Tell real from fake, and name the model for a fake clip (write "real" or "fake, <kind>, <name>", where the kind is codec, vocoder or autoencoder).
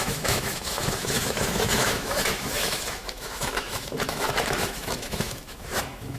fake, autoencoder, DAC-VAE